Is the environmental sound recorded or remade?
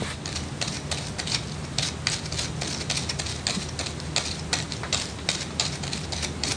recorded